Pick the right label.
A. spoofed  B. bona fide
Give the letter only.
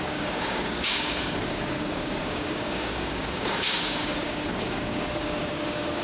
A